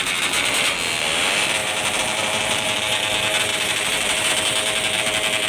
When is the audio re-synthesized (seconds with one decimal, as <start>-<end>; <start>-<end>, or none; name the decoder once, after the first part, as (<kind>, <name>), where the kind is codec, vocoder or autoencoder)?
1.6-3.0 (vocoder, BigVGAN v2); 3.5-4.3